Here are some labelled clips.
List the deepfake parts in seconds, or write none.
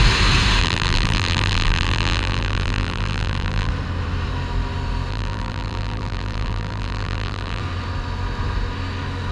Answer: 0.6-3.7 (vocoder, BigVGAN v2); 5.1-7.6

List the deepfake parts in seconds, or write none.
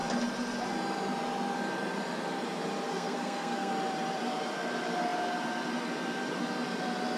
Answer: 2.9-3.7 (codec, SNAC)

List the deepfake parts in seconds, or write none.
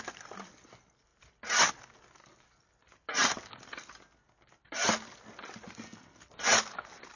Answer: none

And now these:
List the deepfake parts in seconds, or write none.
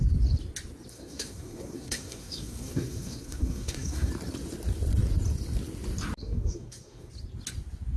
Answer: 0.9-4.1 (codec, SNAC); 6.2-7.1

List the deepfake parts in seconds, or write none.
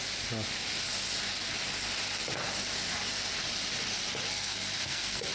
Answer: 4.3-5.3 (codec, SNAC)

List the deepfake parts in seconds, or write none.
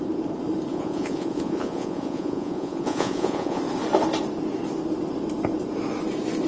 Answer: 0.7-3.6 (vocoder, Vocos)